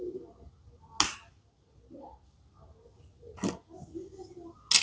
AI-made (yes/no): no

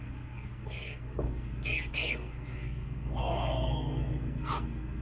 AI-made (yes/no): yes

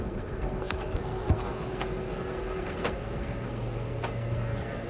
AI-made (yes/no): yes